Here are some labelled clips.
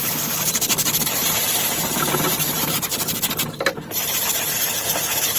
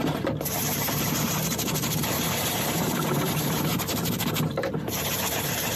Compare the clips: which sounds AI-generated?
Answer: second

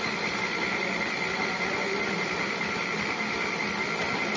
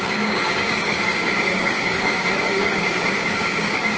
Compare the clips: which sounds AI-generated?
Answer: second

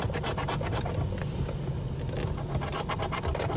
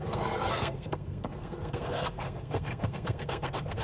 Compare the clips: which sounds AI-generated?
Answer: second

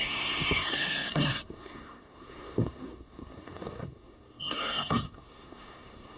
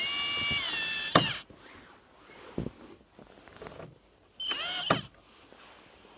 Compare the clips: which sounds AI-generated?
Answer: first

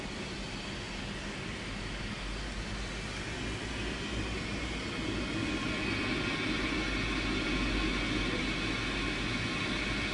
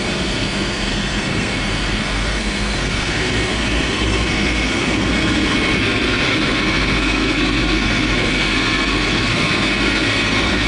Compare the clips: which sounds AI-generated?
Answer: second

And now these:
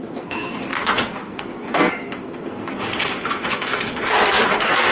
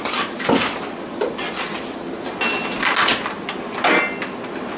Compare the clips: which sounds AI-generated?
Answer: first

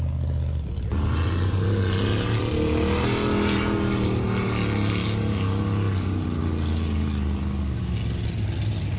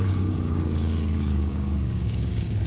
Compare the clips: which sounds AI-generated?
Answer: second